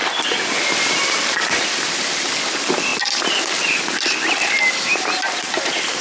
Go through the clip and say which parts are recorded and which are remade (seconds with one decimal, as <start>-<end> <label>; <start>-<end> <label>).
0.0-6.0 recorded